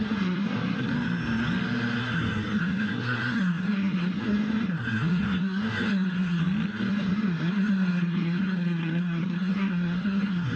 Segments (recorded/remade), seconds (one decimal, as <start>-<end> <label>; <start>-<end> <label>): 0.0-0.9 remade; 0.9-2.0 recorded; 2.0-6.4 remade; 6.4-6.9 recorded; 6.9-10.6 remade